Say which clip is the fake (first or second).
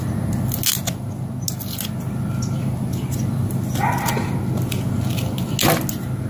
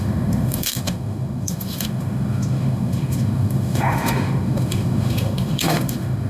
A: second